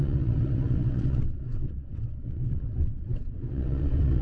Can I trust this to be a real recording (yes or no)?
no